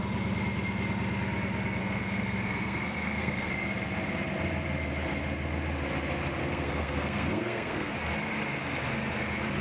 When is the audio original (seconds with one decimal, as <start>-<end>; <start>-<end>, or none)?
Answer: 0.0-1.8; 3.5-6.4; 7.9-9.6